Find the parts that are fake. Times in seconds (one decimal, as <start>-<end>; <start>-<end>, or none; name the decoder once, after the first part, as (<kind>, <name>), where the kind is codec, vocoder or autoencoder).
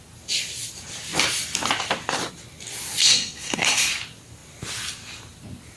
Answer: 3.0-3.9 (codec, SNAC)